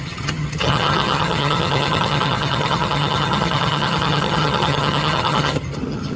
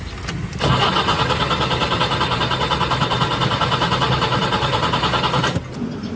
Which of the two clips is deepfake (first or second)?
first